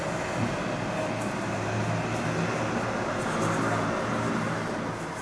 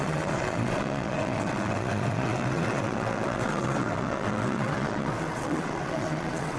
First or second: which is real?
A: first